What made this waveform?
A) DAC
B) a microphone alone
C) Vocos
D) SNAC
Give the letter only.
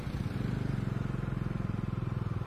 B